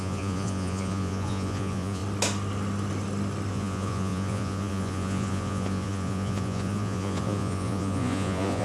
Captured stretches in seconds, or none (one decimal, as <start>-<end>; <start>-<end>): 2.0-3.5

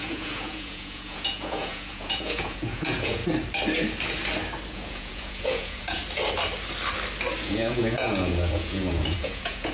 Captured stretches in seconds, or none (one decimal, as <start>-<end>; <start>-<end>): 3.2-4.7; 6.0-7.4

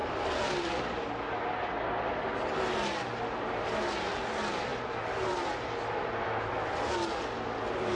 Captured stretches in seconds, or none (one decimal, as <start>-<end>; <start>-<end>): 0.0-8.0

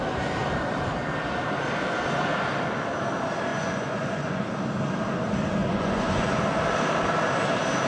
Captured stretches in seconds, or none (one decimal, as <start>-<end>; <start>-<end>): 0.0-3.5; 4.4-5.6; 6.4-7.9